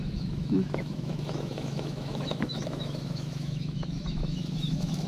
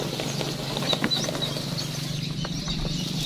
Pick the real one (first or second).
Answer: second